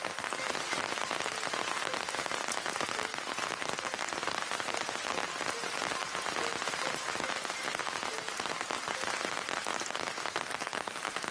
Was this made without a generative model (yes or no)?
yes